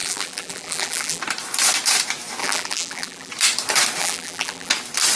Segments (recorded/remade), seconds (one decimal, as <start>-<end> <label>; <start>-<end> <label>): 0.0-1.2 remade; 1.2-2.4 recorded; 2.4-3.3 remade; 3.3-4.0 recorded; 4.0-4.7 remade; 4.7-5.2 recorded